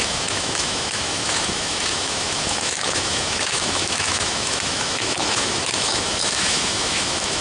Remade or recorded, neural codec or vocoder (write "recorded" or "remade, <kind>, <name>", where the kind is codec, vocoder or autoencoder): remade, autoencoder, DAC-VAE